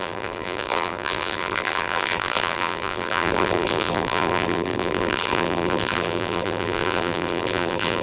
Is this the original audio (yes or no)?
no